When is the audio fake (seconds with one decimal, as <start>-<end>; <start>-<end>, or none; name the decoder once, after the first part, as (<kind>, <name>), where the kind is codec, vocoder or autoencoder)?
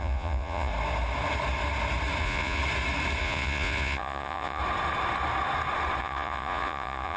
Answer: 0.0-0.7 (vocoder, Vocos); 2.2-2.6; 3.2-4.6; 6.0-7.2